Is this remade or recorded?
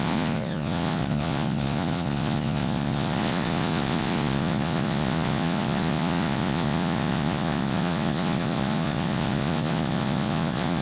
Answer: remade